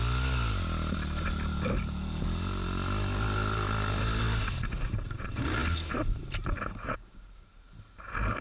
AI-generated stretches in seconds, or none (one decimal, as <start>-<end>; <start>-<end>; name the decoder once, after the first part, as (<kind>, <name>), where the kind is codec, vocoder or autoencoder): 6.9-7.5 (codec, DAC)